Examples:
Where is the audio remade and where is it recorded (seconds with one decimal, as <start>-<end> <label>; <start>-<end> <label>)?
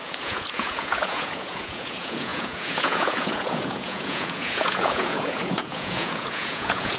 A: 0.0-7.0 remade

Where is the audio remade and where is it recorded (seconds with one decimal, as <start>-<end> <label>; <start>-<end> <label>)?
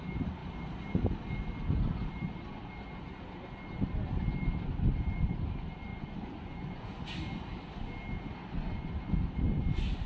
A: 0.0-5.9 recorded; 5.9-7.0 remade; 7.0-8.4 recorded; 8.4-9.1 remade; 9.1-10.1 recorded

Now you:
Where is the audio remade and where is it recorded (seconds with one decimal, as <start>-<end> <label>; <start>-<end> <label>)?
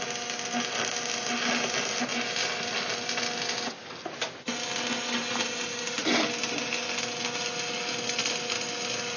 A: 0.0-9.2 recorded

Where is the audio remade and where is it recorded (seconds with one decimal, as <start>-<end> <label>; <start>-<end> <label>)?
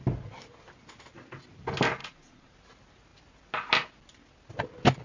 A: 0.0-2.0 recorded; 2.0-2.5 remade; 2.5-5.0 recorded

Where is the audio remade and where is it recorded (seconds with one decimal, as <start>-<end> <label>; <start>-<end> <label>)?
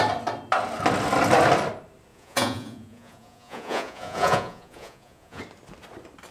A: 0.0-2.1 recorded; 2.1-5.4 remade; 5.4-6.3 recorded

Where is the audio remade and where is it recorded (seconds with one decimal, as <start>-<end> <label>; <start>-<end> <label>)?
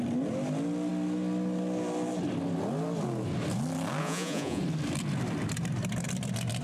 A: 0.0-4.0 recorded; 4.0-4.6 remade; 4.6-6.6 recorded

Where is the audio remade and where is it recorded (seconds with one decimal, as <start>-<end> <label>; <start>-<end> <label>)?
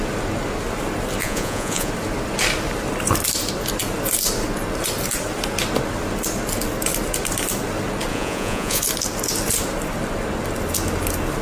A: 0.0-1.2 recorded; 1.2-1.9 remade; 1.9-8.1 recorded; 8.1-8.8 remade; 8.8-11.4 recorded